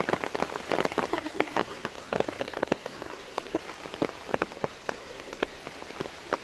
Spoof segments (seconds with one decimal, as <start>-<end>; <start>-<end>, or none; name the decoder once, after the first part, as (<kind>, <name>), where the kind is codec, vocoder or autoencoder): 1.1-3.6 (codec, SNAC); 4.3-5.6